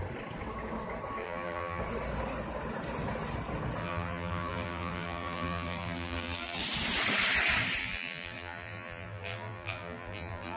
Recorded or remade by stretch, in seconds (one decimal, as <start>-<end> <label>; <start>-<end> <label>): 0.0-1.2 recorded; 1.2-1.8 remade; 1.8-3.8 recorded; 3.8-6.6 remade; 6.6-7.8 recorded; 7.8-10.6 remade

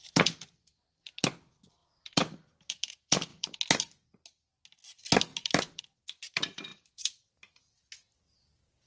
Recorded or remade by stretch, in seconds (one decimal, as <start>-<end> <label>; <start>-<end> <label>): 0.0-3.3 recorded; 3.3-3.8 remade; 3.8-5.3 recorded; 5.3-5.8 remade; 5.8-6.7 recorded; 6.7-8.2 remade; 8.2-8.9 recorded

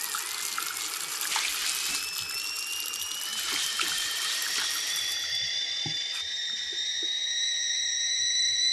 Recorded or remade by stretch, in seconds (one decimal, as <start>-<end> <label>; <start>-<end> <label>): 0.0-3.3 recorded; 3.3-7.2 remade; 7.2-8.7 recorded

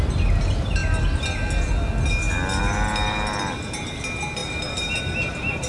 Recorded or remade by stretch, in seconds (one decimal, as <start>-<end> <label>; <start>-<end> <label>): 0.0-5.7 recorded

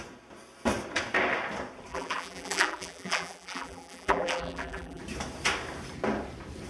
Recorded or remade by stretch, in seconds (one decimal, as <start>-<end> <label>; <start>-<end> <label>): 0.0-1.9 recorded; 1.9-5.0 remade; 5.0-6.7 recorded

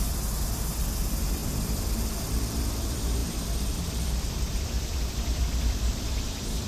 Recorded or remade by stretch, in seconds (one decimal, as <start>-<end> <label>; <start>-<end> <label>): 0.0-6.7 remade